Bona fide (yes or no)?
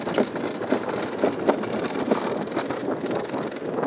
yes